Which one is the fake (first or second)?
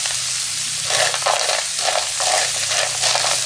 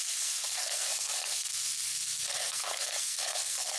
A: second